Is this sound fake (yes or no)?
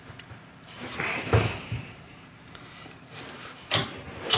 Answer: yes